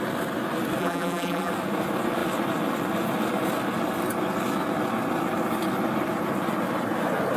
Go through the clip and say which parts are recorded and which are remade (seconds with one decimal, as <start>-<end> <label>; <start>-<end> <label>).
0.0-0.8 recorded; 0.8-1.5 remade; 1.5-7.4 recorded